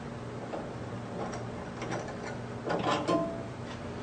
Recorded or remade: recorded